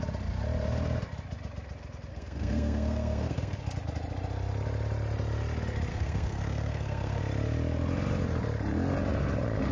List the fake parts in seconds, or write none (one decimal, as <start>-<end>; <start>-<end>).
2.1-3.6; 5.9-7.2